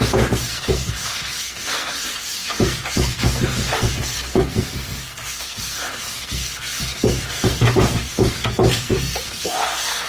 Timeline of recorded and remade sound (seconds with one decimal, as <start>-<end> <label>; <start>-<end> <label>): 0.0-10.1 remade